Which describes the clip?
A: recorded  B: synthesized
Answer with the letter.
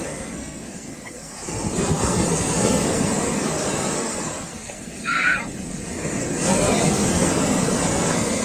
B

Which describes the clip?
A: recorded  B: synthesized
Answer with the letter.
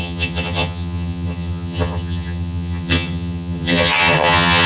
B